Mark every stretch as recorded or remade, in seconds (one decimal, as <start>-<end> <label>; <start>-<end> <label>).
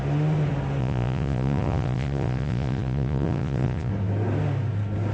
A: 0.0-0.8 recorded; 0.8-3.9 remade; 3.9-5.1 recorded